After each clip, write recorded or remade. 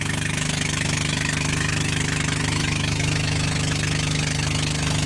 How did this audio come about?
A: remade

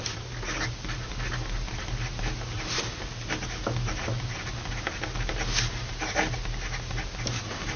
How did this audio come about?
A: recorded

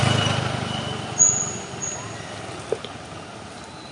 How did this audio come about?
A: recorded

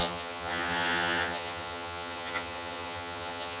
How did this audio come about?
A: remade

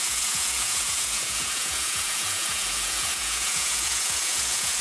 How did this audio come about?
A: remade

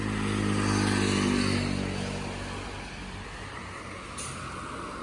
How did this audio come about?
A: recorded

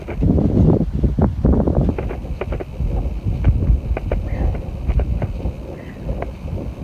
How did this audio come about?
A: recorded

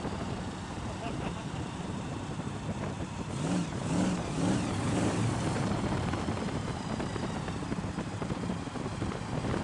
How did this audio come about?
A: remade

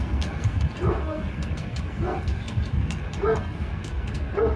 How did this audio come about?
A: remade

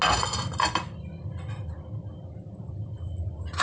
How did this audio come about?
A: recorded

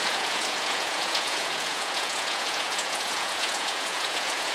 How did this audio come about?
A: remade